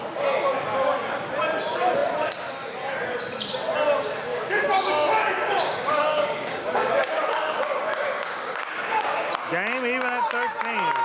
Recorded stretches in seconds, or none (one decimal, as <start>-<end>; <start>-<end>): 0.0-4.3; 9.3-11.0